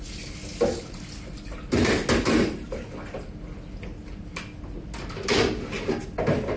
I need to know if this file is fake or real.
real